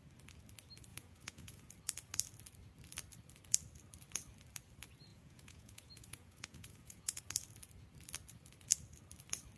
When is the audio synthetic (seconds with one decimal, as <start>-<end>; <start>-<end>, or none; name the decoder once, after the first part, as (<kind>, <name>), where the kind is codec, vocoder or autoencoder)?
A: 0.9-1.7 (vocoder, Vocos); 5.1-7.2